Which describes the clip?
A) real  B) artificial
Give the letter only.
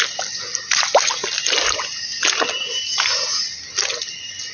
A